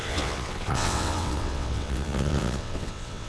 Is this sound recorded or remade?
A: remade